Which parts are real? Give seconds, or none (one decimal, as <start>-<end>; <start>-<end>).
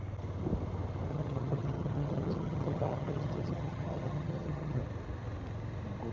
0.0-1.1; 4.8-6.1